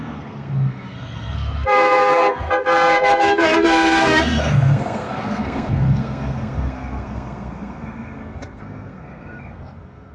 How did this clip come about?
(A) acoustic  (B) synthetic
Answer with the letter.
B